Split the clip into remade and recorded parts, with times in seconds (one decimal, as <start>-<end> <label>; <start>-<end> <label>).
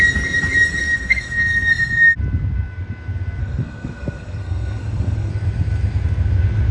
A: 0.0-0.8 recorded; 0.8-1.7 remade; 1.7-3.4 recorded; 3.4-5.3 remade; 5.3-6.7 recorded